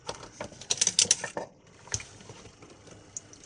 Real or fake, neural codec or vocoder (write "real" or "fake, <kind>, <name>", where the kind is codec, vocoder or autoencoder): real